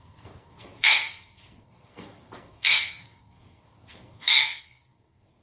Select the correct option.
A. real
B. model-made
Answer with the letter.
B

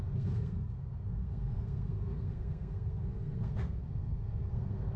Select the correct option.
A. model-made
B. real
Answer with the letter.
A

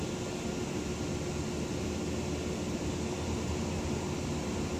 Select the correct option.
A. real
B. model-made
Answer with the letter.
A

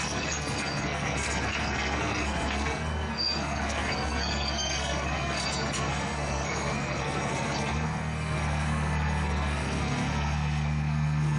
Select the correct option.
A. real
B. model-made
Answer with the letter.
B